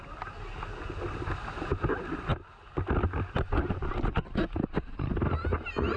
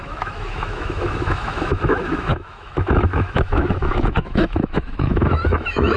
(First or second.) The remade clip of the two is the second